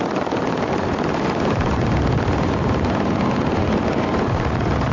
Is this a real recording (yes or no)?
yes